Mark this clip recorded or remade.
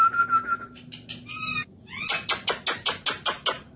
recorded